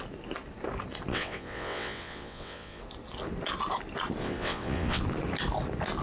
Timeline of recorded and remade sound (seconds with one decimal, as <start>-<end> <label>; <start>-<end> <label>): 0.0-1.1 recorded; 1.1-2.8 remade; 2.8-4.2 recorded; 4.2-5.0 remade; 5.0-6.0 recorded